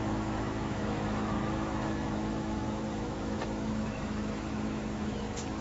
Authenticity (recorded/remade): remade